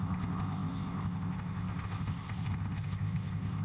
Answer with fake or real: fake